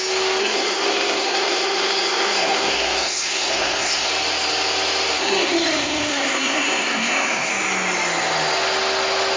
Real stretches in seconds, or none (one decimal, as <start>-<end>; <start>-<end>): 0.0-0.4; 4.1-5.2; 7.5-9.4